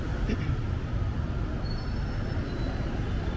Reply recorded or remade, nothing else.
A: recorded